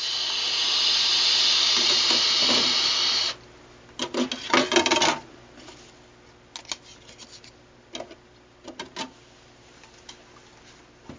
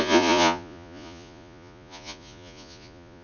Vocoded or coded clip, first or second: second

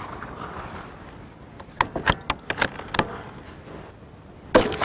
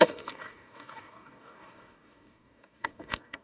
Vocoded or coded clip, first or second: second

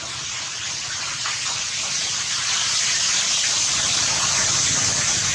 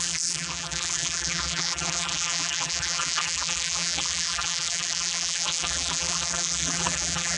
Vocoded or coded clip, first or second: second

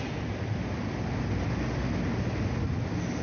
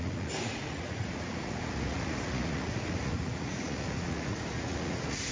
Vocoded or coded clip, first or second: second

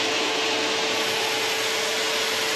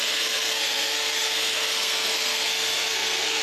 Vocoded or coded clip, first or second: second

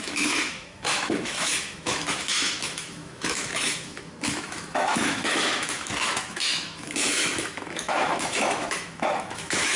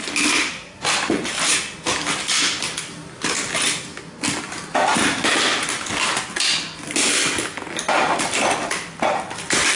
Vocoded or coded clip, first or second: first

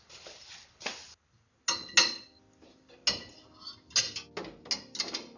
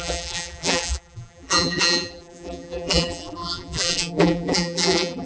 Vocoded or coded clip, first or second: second